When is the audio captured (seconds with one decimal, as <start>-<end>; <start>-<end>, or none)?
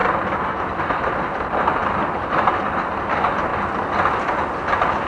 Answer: 0.0-1.8; 2.5-5.1